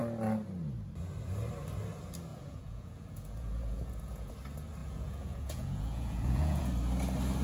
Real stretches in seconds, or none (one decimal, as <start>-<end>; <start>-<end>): 0.0-2.3; 4.3-4.8; 6.7-7.4